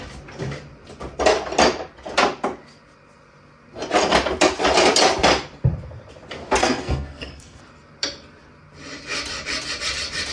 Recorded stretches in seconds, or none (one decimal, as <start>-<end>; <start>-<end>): 0.0-6.6; 7.6-10.3